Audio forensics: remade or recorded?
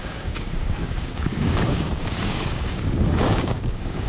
remade